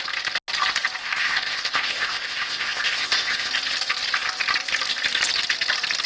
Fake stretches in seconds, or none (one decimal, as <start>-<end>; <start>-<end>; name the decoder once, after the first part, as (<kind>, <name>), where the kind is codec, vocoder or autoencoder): 1.0-3.5 (codec, ZipCodec)